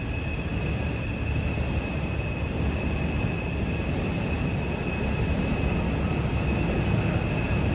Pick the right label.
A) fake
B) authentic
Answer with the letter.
B